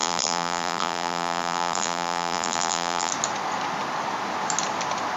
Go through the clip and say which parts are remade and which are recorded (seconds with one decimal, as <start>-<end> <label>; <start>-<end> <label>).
0.0-3.1 remade; 3.1-5.2 recorded